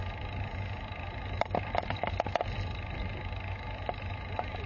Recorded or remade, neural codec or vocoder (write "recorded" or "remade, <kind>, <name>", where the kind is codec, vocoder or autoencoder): recorded